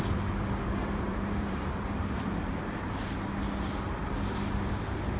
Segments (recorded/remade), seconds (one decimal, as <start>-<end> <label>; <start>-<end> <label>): 0.0-0.8 recorded; 0.8-2.9 remade; 2.9-5.2 recorded